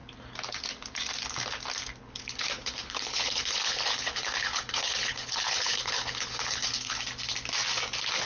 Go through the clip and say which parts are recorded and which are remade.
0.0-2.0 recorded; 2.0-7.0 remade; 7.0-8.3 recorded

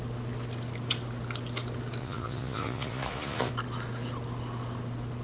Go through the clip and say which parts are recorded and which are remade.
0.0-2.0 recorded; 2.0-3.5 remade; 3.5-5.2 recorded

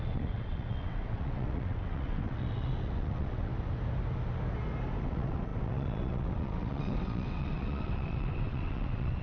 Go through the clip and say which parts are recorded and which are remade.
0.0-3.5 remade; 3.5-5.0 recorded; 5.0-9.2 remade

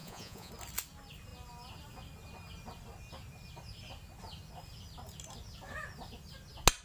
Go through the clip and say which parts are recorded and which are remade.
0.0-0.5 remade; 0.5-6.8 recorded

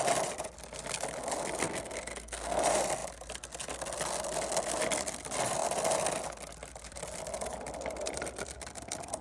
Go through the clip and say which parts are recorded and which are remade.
0.0-1.6 recorded; 1.6-2.6 remade; 2.6-9.2 recorded

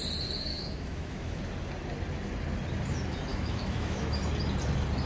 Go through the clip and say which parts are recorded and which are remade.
0.0-0.5 recorded; 0.5-1.4 remade; 1.4-3.3 recorded; 3.3-4.2 remade; 4.2-5.1 recorded

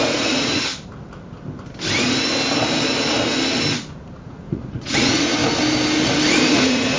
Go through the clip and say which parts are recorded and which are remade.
0.0-0.7 remade; 0.7-4.2 recorded; 4.2-5.4 remade; 5.4-6.5 recorded; 6.5-7.0 remade

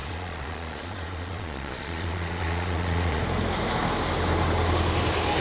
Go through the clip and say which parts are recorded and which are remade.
0.0-3.2 remade; 3.2-5.4 recorded